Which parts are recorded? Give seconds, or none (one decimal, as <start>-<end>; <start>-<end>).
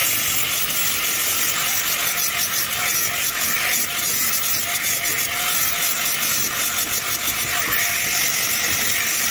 0.0-9.3